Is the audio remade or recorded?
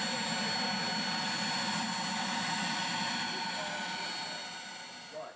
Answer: recorded